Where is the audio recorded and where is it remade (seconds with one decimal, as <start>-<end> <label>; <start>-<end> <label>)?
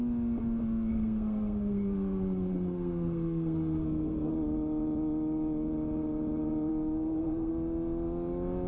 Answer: 0.0-0.9 recorded; 0.9-4.3 remade; 4.3-6.7 recorded; 6.7-7.5 remade; 7.5-8.7 recorded